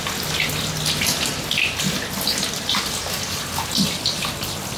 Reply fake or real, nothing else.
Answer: real